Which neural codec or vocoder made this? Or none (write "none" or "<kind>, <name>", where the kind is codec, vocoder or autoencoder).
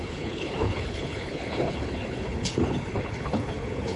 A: codec, HILCodec